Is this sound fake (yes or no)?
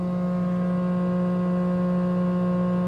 no